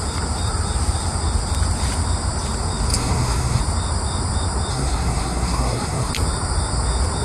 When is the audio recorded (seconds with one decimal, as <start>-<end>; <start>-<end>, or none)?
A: 0.0-2.9; 3.6-4.7; 6.1-7.2